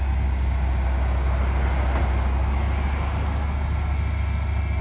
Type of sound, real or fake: real